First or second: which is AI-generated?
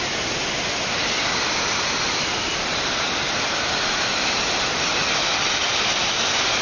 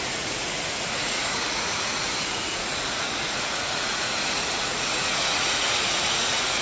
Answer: second